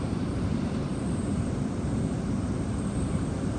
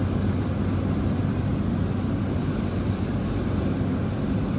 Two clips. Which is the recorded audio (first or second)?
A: second